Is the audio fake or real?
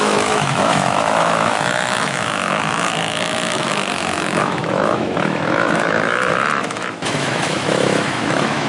fake